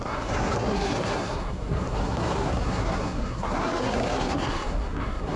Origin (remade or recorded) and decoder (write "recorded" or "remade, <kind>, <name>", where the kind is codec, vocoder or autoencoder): remade, codec, SNAC